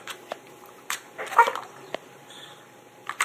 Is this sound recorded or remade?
remade